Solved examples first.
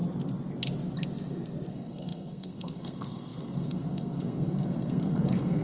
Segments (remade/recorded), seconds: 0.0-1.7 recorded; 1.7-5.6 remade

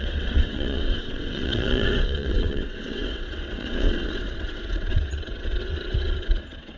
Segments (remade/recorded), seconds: 0.0-6.8 remade

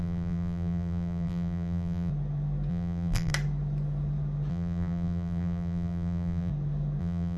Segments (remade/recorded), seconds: 0.0-2.1 remade; 2.1-2.7 recorded; 2.7-3.3 remade; 3.3-4.5 recorded; 4.5-6.5 remade; 6.5-7.0 recorded; 7.0-7.4 remade

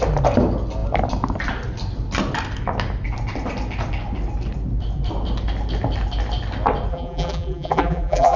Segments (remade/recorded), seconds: 0.0-6.9 recorded; 6.9-8.4 remade